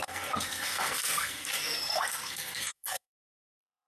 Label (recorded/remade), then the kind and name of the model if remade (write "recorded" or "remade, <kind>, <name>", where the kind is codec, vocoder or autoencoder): remade, codec, SNAC